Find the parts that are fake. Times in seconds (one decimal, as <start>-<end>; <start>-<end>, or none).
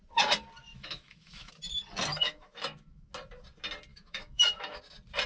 0.7-1.5; 2.1-3.1; 3.9-4.8